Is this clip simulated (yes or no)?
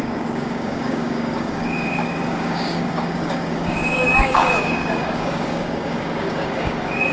yes